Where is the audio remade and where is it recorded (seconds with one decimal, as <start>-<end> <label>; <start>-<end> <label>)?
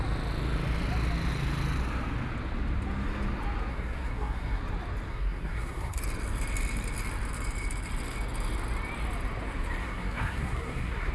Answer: 0.0-3.7 recorded; 3.7-4.6 remade; 4.6-5.1 recorded; 5.1-6.0 remade; 6.0-9.8 recorded; 9.8-11.1 remade